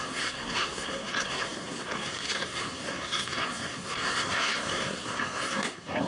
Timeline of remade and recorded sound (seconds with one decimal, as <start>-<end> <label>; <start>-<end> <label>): 0.0-6.1 remade